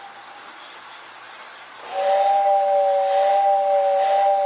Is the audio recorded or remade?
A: recorded